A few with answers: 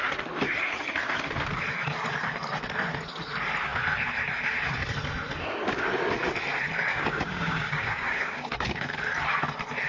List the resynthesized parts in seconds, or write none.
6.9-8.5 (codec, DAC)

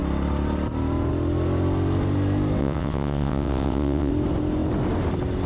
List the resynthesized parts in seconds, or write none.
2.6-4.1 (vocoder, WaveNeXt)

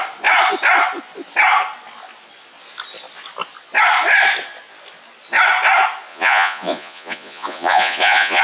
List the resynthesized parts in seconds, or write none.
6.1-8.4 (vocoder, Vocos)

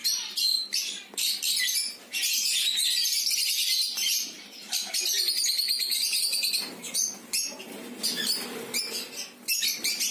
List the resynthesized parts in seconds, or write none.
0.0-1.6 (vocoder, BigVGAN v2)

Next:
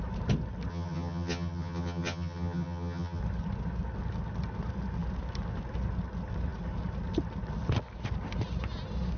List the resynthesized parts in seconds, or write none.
0.7-3.2 (vocoder, HiFi-GAN)

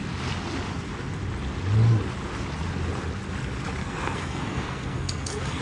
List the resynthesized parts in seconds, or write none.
3.8-5.6 (codec, SNAC)